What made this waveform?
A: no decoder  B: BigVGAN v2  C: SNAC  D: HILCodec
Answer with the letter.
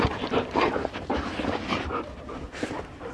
A